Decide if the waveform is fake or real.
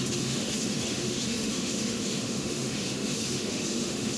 fake